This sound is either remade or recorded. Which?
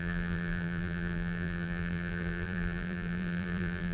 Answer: remade